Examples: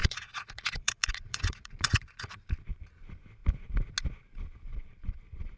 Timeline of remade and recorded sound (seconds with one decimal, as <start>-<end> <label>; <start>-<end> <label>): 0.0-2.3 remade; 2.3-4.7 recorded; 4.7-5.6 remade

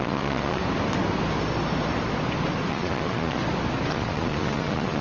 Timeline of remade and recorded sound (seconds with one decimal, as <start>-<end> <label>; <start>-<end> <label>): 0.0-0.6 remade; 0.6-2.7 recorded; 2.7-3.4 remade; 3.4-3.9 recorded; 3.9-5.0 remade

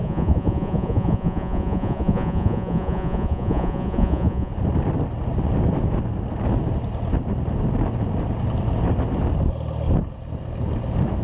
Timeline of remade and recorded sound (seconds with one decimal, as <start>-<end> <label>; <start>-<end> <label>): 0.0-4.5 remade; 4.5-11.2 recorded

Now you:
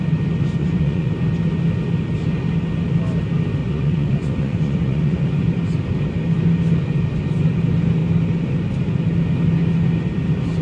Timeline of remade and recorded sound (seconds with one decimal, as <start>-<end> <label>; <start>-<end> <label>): 0.0-0.6 recorded; 0.6-1.1 remade; 1.1-3.6 recorded; 3.6-5.6 remade; 5.6-10.6 recorded

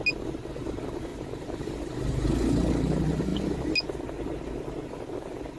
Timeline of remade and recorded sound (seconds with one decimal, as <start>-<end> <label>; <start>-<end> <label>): 0.0-5.6 recorded